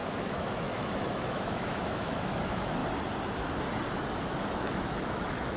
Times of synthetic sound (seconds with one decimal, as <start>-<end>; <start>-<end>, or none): 0.0-2.8; 4.2-5.6